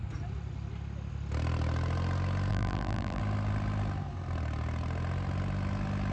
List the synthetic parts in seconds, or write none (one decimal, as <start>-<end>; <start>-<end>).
2.5-3.2